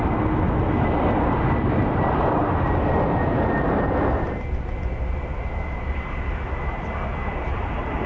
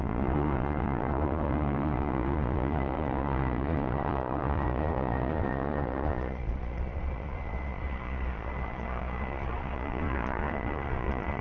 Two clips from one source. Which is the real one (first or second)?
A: first